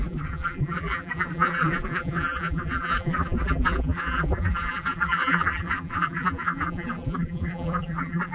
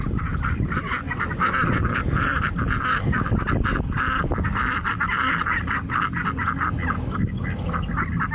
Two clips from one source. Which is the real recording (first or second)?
second